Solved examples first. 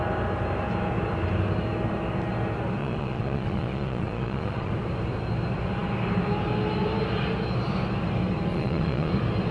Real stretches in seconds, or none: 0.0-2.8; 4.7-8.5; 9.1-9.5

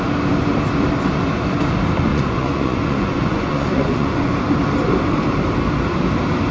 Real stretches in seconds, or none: 0.0-2.1; 4.3-6.5

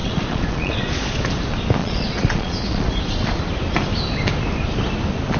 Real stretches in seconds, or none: 1.2-1.8; 3.0-5.4

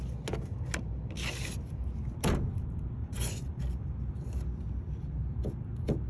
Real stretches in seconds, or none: 0.0-3.0; 3.6-6.1

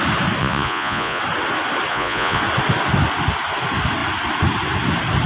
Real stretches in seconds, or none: 0.0-0.4; 1.2-1.9; 2.4-5.3

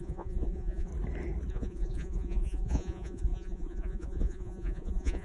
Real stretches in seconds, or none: 0.9-1.5

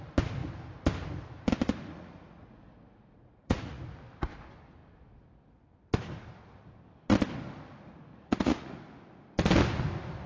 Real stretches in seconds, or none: 0.0-1.9; 3.8-8.1; 8.8-10.3

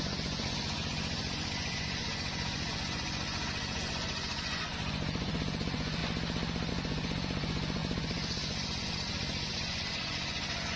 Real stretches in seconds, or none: 6.0-6.7